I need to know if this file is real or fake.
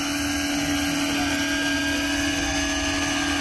real